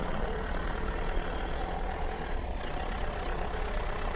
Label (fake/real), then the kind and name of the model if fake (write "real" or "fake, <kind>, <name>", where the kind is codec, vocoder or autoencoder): fake, vocoder, Vocos